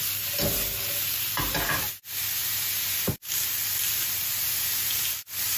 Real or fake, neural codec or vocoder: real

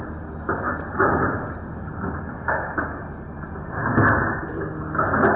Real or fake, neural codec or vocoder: real